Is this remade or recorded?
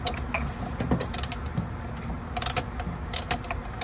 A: recorded